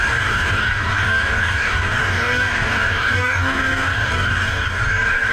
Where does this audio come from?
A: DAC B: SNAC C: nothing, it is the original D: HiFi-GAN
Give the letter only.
A